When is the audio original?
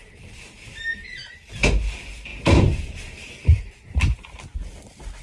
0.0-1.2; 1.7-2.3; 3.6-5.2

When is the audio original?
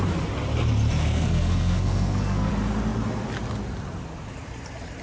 0.0-1.0; 2.5-5.0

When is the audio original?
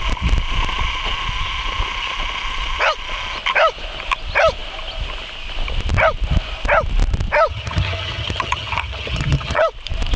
0.0-7.5; 9.6-10.2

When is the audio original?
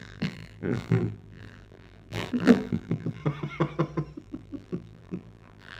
3.2-4.2